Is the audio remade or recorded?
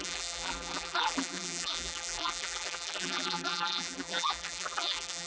remade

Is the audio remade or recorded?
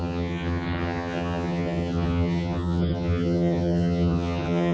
remade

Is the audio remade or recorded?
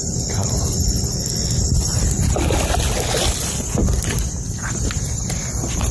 recorded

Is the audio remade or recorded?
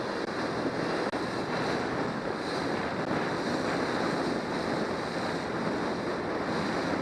recorded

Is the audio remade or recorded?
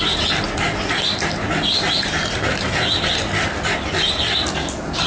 recorded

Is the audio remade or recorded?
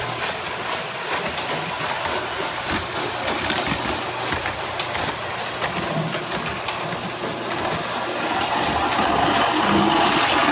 recorded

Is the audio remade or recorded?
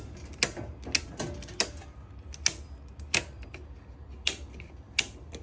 recorded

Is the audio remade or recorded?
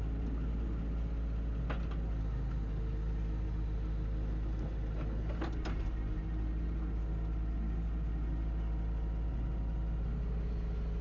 recorded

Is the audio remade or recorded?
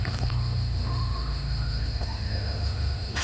remade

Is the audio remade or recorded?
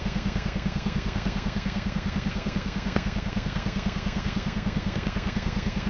remade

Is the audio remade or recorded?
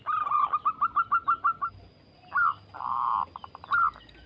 recorded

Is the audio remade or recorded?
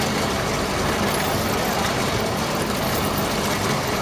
recorded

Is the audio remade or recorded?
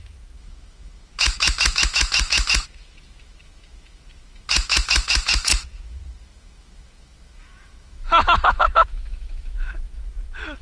remade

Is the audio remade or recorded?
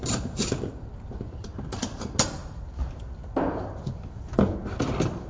recorded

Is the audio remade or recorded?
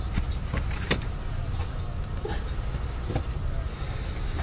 recorded